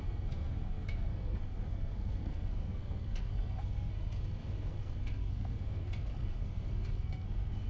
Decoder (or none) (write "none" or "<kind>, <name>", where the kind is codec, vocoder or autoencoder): codec, SNAC